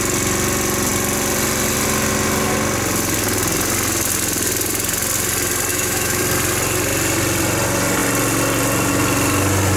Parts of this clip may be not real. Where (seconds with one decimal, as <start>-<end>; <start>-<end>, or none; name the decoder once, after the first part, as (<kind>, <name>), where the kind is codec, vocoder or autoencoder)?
5.7-6.2 (autoencoder, DAC-VAE)